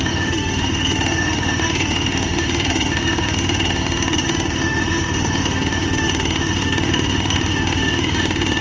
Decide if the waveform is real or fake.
fake